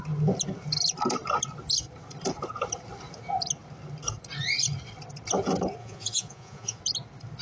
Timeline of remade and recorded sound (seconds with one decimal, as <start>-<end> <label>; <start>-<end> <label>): 0.0-5.8 recorded; 5.8-6.8 remade; 6.8-7.4 recorded